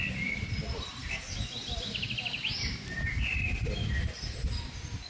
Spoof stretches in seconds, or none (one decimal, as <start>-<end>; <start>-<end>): none

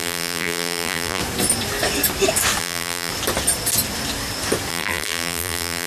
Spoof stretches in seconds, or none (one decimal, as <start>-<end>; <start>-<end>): 0.0-1.2; 2.6-3.1; 4.7-5.9

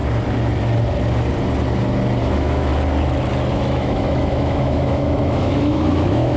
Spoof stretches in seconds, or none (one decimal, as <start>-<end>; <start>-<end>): 2.2-2.7; 3.5-6.4

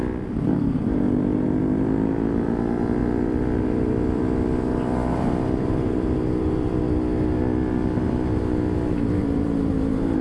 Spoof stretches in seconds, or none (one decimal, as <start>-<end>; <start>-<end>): 3.0-6.8; 9.2-10.2